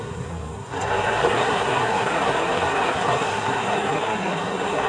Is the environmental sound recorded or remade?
remade